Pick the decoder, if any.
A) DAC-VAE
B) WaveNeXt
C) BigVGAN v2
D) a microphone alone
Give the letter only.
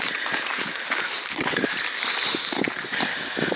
D